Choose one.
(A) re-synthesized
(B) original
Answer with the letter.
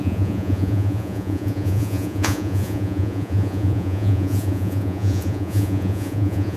A